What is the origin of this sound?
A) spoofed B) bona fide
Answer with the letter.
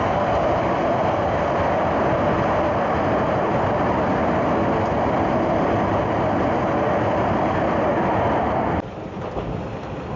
B